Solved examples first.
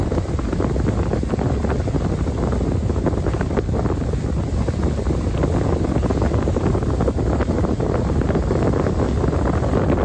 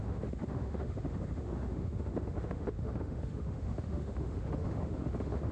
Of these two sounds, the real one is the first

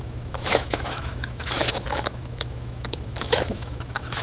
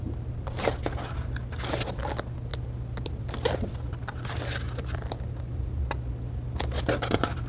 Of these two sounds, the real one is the second